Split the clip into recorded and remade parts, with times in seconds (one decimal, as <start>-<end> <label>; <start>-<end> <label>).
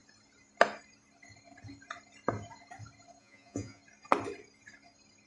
0.0-3.2 recorded; 3.2-3.8 remade; 3.8-5.3 recorded